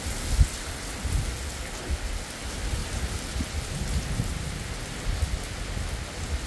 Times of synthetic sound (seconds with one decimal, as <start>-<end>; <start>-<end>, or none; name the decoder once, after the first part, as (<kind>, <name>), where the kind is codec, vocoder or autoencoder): none